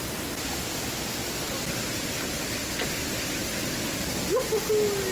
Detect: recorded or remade recorded